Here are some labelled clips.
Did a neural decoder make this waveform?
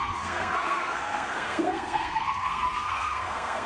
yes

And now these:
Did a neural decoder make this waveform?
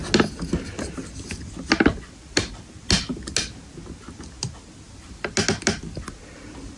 no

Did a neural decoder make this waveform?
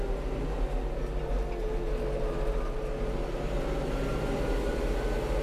no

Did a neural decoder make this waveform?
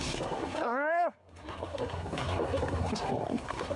yes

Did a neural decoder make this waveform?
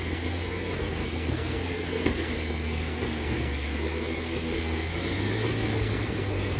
yes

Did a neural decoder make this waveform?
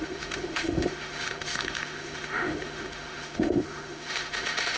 yes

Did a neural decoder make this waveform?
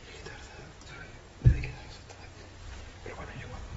yes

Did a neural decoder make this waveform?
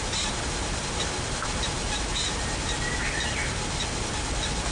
no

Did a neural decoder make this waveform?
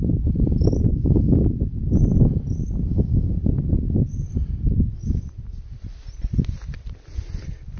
no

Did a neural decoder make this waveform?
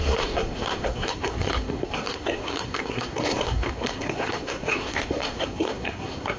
yes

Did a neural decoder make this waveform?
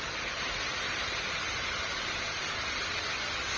no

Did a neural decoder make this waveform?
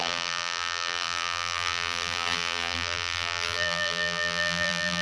yes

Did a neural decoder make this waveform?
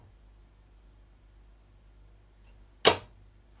no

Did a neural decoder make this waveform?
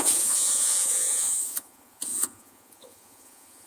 yes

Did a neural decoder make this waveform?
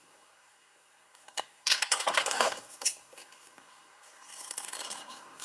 yes